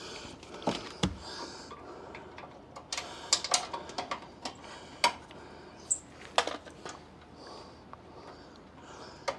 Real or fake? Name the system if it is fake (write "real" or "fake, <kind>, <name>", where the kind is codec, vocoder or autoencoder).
real